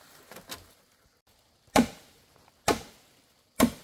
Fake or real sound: real